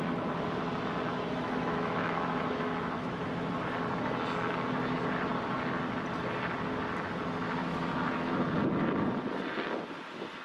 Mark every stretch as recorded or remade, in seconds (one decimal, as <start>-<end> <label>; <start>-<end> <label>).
0.0-1.1 recorded; 1.1-3.5 remade; 3.5-7.6 recorded; 7.6-8.2 remade; 8.2-10.4 recorded